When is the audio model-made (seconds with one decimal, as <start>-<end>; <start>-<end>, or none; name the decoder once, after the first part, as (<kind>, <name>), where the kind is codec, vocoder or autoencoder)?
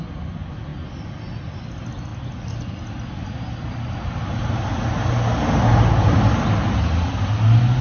none